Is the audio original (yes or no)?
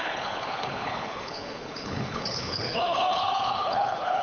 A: no